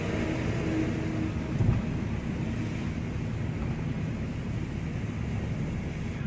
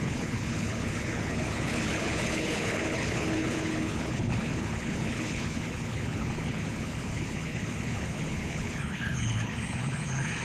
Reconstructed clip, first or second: second